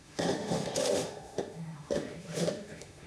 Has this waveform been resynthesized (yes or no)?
yes